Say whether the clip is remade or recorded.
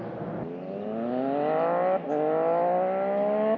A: recorded